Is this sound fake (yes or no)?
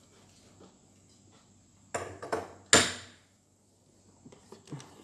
no